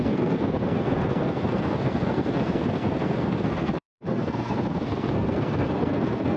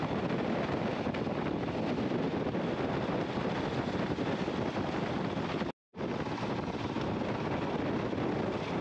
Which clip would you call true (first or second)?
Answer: second